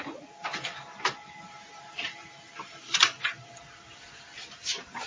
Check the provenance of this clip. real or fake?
fake